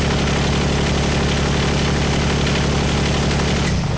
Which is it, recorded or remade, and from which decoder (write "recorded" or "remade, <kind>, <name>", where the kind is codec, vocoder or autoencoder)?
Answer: recorded